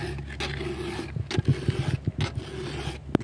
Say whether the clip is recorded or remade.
recorded